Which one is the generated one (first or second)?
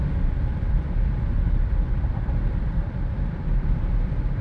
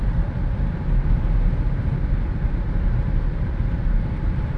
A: first